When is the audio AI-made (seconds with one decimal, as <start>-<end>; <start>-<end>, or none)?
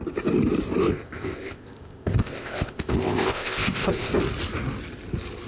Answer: 0.8-4.1